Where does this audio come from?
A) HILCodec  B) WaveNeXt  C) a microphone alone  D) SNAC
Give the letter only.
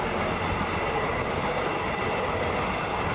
C